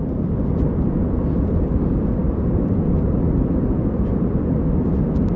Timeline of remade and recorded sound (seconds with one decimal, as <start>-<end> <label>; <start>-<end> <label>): 0.0-5.4 recorded